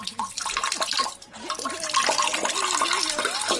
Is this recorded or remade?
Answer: recorded